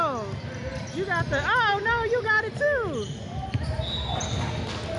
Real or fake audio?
real